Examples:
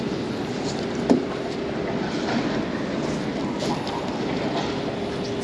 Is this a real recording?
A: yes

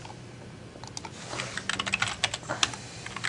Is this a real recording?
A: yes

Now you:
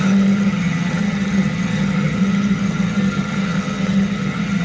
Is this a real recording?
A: no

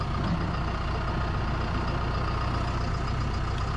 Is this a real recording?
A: yes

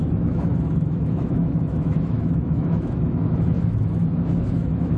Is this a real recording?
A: no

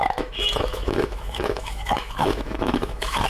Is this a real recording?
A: no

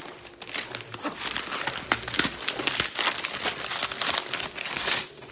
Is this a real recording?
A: yes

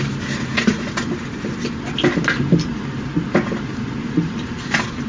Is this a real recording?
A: yes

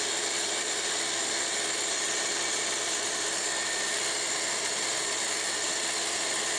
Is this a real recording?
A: yes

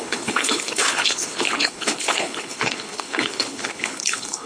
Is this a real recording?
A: no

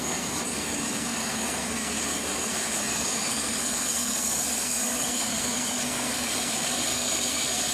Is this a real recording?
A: no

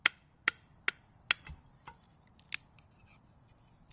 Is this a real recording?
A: yes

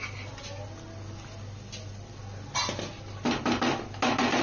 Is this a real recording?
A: yes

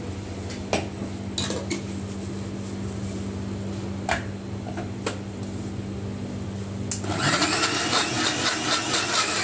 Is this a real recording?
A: yes